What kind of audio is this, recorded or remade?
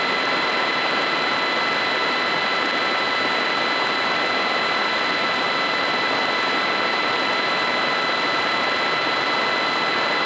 recorded